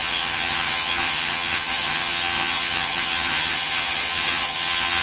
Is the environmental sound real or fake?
fake